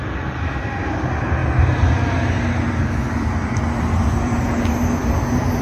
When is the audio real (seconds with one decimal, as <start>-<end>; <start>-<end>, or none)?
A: 0.0-5.6